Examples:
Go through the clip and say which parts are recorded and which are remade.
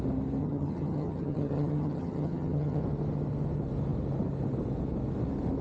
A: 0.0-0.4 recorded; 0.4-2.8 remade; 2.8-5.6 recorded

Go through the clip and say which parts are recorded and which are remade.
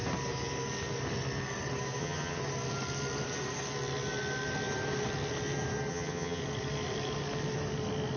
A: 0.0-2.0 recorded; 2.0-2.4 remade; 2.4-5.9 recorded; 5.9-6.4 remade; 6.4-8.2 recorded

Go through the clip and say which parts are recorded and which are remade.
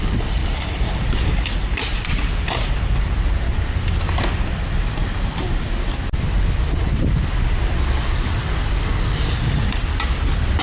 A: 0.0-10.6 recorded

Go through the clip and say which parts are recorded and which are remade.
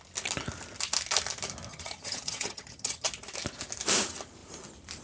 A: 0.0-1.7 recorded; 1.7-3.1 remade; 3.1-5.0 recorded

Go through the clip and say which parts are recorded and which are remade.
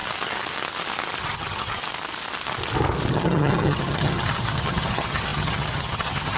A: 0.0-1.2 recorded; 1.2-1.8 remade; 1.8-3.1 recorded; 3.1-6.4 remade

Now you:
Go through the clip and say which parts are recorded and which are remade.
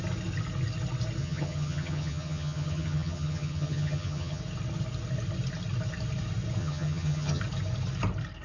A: 0.0-1.2 recorded; 1.2-4.4 remade; 4.4-6.6 recorded; 6.6-7.4 remade; 7.4-8.4 recorded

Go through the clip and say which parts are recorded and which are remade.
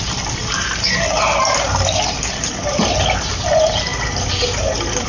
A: 0.0-5.1 recorded